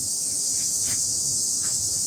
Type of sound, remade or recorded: remade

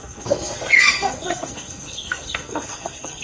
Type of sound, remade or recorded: remade